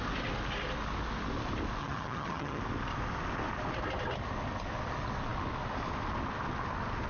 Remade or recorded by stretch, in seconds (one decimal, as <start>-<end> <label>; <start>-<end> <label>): 0.0-1.8 recorded; 1.8-2.6 remade; 2.6-7.1 recorded